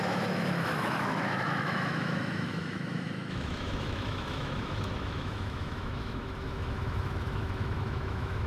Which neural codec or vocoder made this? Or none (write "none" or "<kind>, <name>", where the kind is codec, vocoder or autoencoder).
autoencoder, DAC-VAE